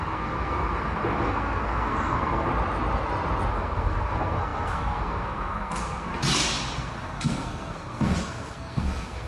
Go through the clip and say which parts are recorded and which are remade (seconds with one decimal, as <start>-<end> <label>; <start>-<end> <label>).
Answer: 0.0-2.5 remade; 2.5-3.5 recorded; 3.5-6.1 remade; 6.1-6.8 recorded; 6.8-9.3 remade